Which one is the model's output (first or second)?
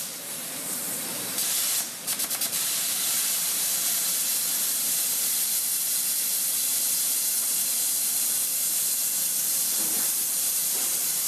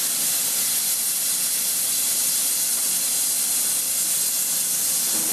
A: first